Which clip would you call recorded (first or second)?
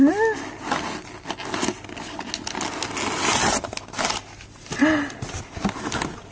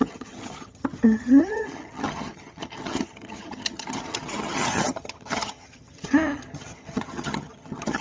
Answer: first